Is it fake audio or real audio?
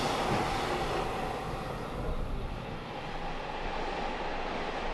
real